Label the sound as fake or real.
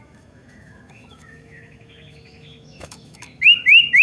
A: fake